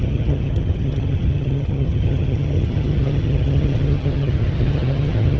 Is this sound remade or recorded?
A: remade